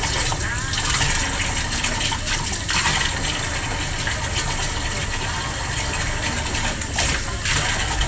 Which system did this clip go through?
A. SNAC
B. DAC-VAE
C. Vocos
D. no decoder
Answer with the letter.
D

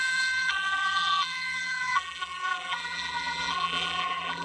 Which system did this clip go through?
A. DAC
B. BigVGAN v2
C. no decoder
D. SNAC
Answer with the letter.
B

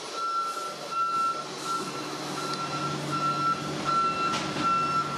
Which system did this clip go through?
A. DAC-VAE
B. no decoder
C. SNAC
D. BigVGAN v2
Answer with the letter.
B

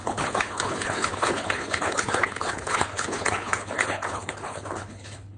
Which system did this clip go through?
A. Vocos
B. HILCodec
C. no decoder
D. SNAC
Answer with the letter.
B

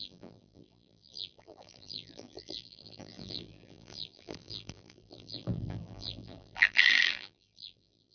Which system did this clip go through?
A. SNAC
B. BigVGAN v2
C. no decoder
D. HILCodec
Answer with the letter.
B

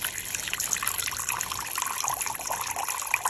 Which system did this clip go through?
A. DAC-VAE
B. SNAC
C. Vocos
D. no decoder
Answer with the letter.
D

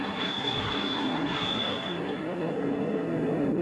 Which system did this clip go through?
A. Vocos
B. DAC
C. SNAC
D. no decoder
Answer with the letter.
C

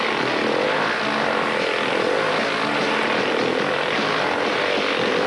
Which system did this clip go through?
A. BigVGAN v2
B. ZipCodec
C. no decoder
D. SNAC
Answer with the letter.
C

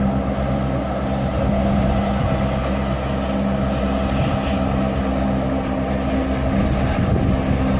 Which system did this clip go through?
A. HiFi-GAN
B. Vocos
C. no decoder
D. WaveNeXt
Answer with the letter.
C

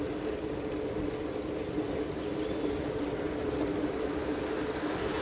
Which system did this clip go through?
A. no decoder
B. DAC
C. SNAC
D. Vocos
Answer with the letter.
A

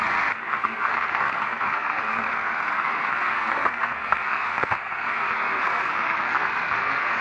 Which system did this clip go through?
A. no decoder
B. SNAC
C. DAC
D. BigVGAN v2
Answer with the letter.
B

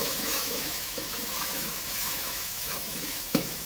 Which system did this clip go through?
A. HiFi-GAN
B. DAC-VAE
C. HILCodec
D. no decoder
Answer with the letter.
B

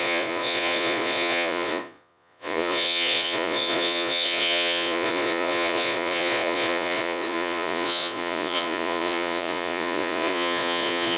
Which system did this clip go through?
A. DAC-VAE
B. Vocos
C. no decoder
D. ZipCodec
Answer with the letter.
B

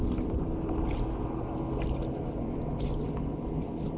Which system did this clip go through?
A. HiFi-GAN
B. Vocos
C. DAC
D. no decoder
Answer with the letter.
D